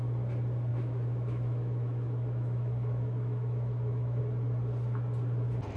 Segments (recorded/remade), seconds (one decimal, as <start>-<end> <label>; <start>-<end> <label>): 0.0-0.7 recorded; 0.7-4.2 remade; 4.2-5.8 recorded